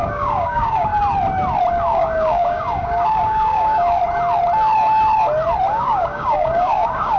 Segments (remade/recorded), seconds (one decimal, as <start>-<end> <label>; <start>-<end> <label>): 0.0-0.9 remade; 0.9-1.7 recorded; 1.7-4.0 remade; 4.0-5.7 recorded; 5.7-7.2 remade